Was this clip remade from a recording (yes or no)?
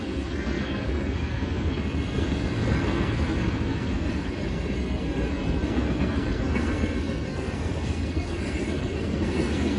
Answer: yes